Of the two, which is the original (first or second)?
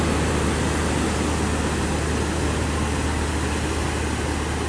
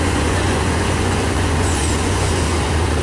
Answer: first